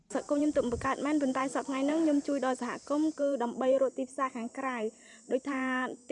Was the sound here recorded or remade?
remade